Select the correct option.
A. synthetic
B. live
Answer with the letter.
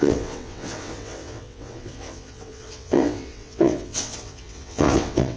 A